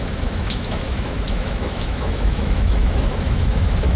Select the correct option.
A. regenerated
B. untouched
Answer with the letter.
A